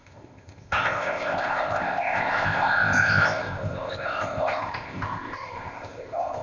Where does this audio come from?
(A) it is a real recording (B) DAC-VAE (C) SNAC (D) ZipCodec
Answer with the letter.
D